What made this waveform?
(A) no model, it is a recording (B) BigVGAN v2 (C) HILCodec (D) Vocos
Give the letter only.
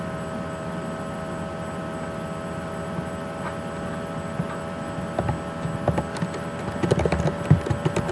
A